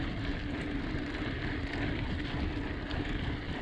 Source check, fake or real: real